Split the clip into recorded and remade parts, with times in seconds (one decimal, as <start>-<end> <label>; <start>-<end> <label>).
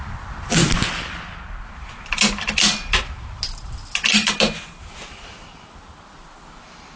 0.0-7.0 recorded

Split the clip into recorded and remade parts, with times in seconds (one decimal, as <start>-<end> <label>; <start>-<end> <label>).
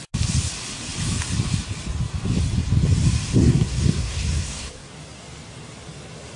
0.0-3.4 recorded; 3.4-4.9 remade; 4.9-6.4 recorded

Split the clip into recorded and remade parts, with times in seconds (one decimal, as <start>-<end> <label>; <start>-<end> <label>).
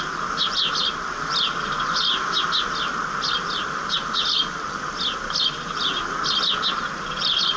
0.0-7.6 recorded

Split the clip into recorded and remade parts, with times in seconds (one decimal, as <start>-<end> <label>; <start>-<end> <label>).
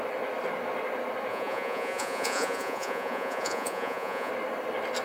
0.0-1.3 recorded; 1.3-4.3 remade; 4.3-5.0 recorded